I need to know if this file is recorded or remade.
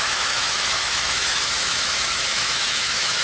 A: remade